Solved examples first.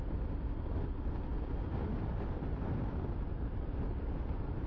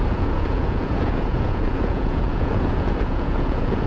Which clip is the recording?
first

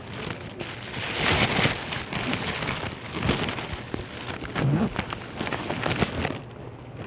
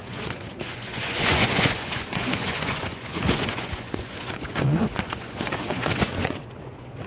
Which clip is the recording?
first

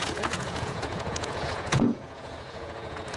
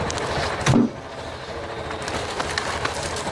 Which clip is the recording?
second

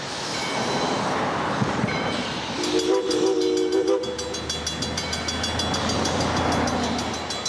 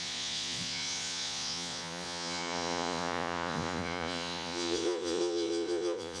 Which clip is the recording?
first